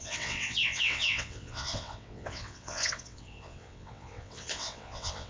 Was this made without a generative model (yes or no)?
no